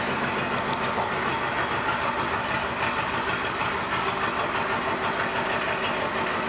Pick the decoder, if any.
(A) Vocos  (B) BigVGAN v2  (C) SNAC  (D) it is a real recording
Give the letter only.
D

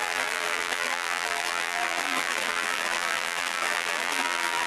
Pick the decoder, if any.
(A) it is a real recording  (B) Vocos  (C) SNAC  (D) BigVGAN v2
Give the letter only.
D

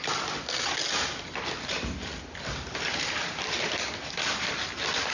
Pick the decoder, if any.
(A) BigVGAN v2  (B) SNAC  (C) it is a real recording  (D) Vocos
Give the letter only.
C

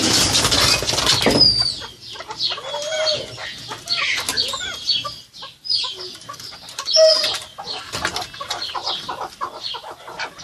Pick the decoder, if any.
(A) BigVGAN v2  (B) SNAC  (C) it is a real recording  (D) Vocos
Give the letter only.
C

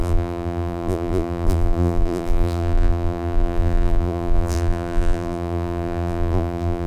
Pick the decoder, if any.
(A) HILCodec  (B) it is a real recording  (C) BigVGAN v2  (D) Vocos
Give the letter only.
C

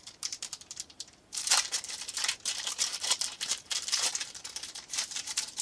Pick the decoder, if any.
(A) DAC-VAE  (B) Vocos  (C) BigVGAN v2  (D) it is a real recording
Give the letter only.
C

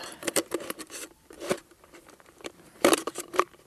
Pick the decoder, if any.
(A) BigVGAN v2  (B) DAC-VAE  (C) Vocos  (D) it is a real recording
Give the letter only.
A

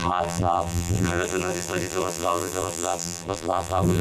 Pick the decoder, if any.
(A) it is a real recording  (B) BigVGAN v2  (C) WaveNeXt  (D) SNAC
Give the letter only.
B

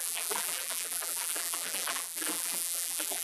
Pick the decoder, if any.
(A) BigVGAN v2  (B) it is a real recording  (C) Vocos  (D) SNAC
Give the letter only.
A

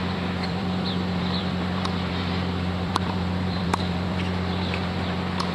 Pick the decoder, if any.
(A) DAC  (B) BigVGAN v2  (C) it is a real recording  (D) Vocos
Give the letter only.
B